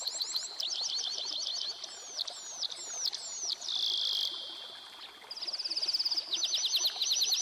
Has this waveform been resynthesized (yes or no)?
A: no